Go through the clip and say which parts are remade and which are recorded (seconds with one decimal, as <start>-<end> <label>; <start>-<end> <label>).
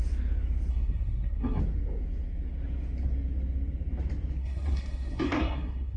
0.0-0.7 recorded; 0.7-1.6 remade; 1.6-4.4 recorded; 4.4-6.0 remade